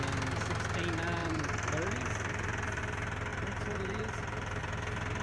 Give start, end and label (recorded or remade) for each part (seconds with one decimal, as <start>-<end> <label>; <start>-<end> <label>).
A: 0.0-1.2 recorded; 1.2-2.8 remade; 2.8-3.3 recorded; 3.3-4.6 remade; 4.6-5.2 recorded